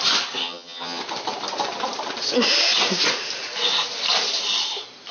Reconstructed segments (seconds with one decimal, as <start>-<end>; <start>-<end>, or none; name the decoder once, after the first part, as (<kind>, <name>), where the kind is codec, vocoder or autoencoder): 0.4-1.0 (vocoder, HiFi-GAN)